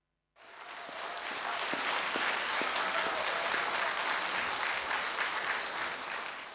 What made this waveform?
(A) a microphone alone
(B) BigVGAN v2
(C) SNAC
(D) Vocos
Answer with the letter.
A